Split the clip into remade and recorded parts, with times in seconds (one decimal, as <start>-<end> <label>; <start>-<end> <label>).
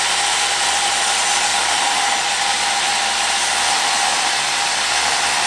0.0-5.5 recorded